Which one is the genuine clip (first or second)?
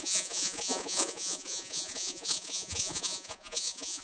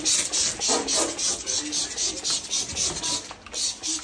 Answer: second